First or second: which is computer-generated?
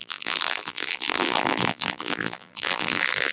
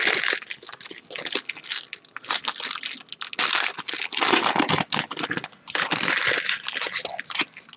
first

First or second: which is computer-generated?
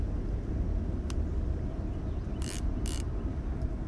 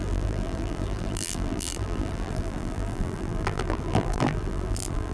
second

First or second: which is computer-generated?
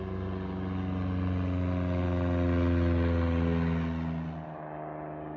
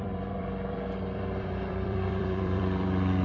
second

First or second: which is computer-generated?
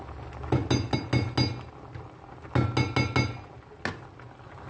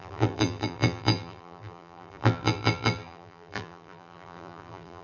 second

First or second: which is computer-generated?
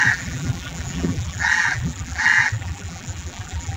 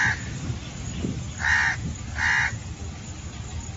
first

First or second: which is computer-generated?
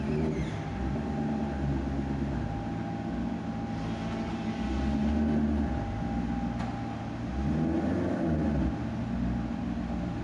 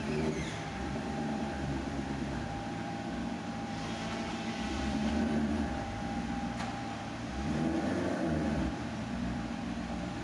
second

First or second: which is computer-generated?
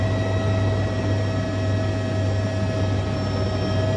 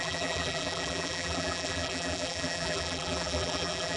second